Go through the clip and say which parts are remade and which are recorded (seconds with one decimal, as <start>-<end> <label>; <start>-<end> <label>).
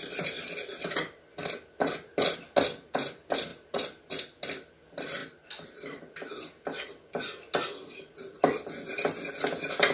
0.0-3.5 recorded; 3.5-4.7 remade; 4.7-9.9 recorded